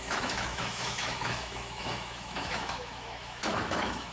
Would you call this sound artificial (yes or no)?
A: yes